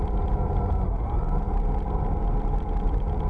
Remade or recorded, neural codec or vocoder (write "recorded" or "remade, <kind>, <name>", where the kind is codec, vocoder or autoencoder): recorded